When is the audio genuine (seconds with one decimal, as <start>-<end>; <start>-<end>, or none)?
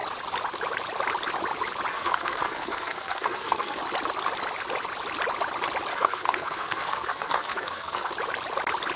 0.0-1.9; 3.8-5.9; 8.1-9.0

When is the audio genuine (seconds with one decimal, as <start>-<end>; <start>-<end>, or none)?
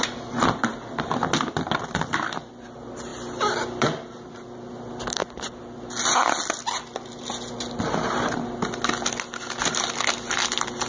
0.0-3.1; 4.9-10.9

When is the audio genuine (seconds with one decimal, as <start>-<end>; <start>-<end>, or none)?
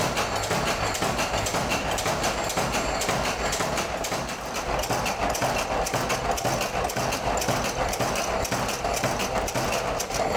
0.0-10.4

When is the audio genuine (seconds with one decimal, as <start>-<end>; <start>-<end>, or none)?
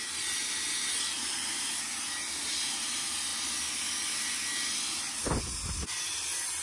0.0-6.6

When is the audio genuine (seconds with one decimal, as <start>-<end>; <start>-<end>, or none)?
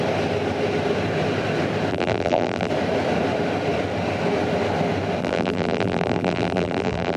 0.0-1.9; 2.7-5.2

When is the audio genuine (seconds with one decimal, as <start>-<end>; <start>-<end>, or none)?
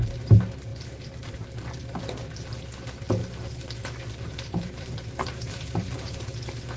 0.0-0.7; 2.0-3.2; 6.3-6.8